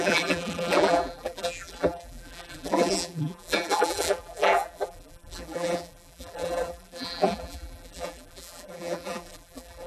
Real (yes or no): no